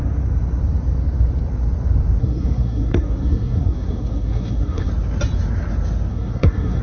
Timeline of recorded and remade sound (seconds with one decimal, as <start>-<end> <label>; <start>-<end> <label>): 0.0-2.2 recorded; 2.2-4.9 remade; 4.9-6.1 recorded; 6.1-6.8 remade